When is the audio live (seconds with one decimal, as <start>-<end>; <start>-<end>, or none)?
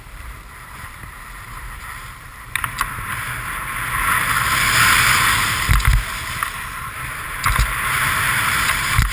2.3-6.6